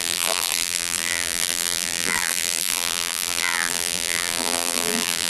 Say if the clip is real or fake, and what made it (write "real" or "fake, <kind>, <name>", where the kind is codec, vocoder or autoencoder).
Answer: fake, vocoder, BigVGAN v2